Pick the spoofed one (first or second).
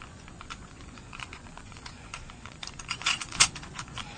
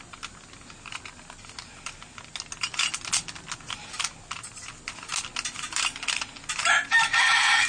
first